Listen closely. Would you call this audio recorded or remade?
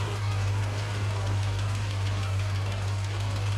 remade